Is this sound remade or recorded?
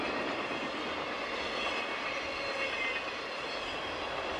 recorded